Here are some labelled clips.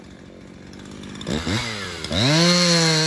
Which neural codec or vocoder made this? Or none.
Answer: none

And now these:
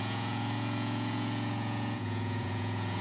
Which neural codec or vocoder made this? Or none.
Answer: vocoder, Vocos